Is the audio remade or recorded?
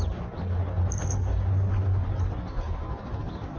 recorded